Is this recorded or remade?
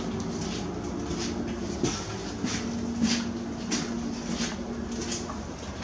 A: recorded